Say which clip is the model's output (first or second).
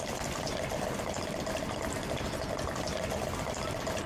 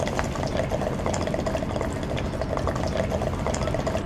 first